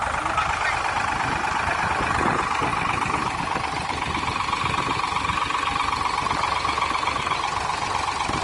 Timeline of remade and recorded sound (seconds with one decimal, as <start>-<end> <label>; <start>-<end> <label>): 0.0-8.4 recorded